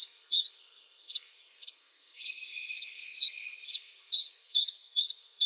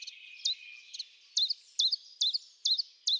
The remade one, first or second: first